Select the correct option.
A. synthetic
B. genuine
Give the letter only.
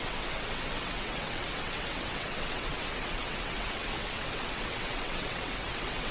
A